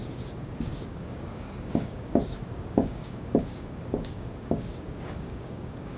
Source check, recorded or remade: remade